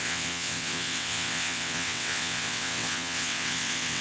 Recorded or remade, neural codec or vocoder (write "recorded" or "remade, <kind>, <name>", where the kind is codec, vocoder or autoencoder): remade, vocoder, WaveNeXt